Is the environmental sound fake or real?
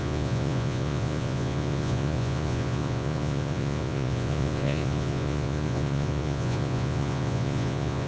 fake